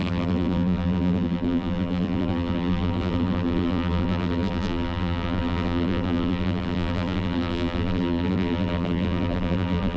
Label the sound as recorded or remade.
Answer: remade